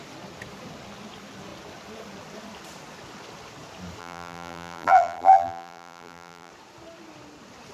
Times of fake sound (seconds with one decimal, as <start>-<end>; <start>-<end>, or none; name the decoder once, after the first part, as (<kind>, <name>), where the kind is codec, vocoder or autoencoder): 4.0-6.5 (vocoder, BigVGAN v2)